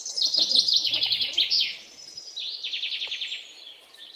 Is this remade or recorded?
recorded